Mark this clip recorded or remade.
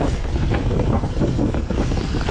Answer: remade